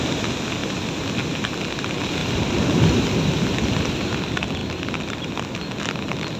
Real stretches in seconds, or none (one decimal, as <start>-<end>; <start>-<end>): 0.0-0.6; 1.3-2.2; 3.0-4.6; 5.4-6.4